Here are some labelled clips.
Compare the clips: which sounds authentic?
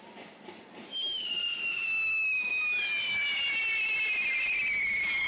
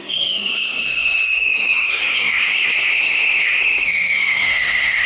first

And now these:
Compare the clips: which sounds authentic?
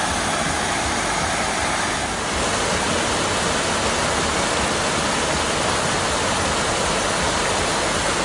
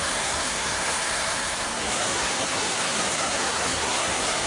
first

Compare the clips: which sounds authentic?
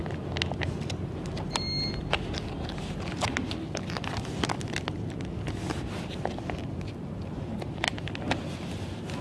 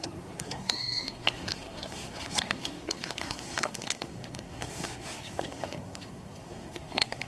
first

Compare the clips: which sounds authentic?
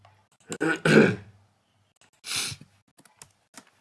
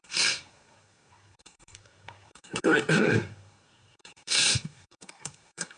first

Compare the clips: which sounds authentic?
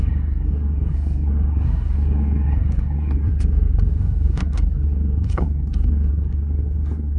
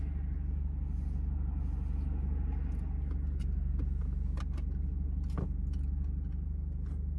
second